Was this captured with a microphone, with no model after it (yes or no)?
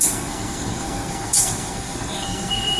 no